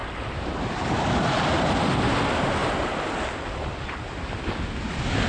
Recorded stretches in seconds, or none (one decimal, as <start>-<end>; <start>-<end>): 0.0-5.3